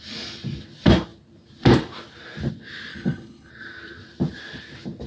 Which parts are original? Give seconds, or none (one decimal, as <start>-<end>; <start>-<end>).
0.0-2.9; 3.5-5.1